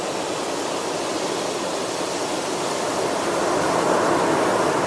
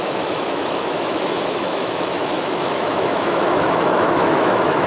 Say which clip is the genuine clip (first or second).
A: first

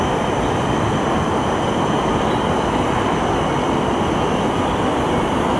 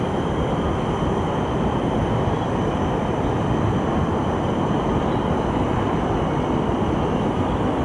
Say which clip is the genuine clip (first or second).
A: first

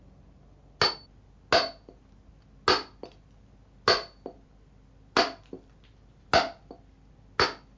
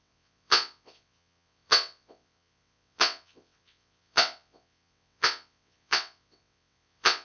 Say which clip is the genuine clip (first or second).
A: first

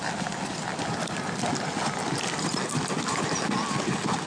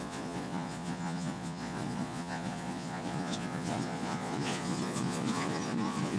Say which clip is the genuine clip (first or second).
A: first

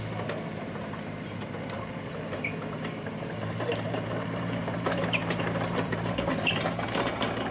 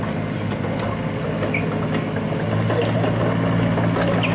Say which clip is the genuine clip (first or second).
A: second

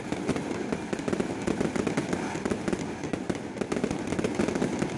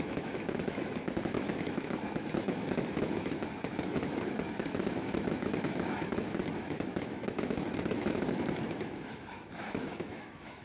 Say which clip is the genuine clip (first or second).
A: first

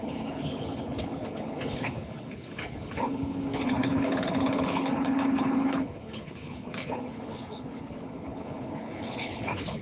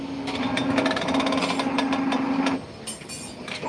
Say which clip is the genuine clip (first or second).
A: second